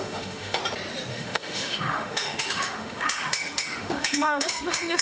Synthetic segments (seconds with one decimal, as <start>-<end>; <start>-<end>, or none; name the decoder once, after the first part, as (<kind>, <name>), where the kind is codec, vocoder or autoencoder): 0.0-0.6 (autoencoder, DAC-VAE); 1.1-5.0